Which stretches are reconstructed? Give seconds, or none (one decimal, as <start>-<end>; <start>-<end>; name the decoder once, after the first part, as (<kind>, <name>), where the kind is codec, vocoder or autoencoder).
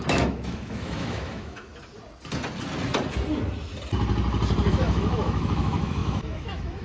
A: 0.0-1.7 (autoencoder, DAC-VAE); 4.7-6.8